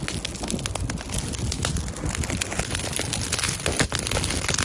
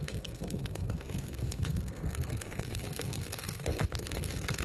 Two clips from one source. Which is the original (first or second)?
first